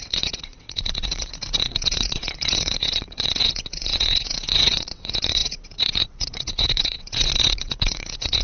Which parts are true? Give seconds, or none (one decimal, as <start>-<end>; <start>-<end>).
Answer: none